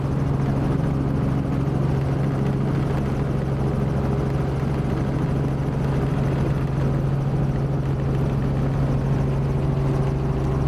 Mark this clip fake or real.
real